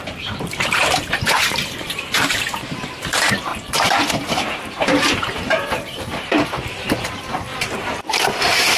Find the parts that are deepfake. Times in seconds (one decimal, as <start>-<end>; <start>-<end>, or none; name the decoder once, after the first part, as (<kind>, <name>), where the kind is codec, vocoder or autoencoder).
0.0-3.5 (vocoder, BigVGAN v2); 4.1-8.8